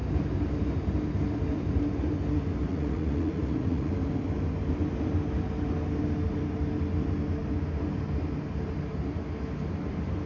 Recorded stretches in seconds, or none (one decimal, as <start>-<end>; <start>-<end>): 0.0-2.7; 3.9-10.3